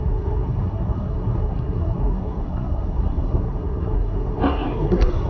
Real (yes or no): no